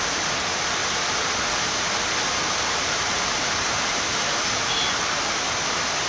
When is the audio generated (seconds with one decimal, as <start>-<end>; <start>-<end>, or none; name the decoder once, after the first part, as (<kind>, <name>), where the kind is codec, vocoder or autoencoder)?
0.0-0.8 (vocoder, BigVGAN v2); 2.4-4.8